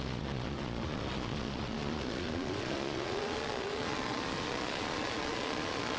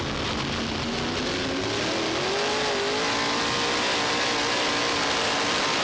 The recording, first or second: second